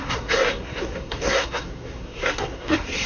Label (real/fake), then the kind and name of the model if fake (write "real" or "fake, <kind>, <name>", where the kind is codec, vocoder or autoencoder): fake, codec, SNAC